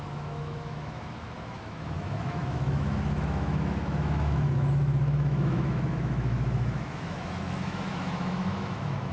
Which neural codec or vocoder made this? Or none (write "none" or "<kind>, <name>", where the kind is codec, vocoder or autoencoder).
autoencoder, DAC-VAE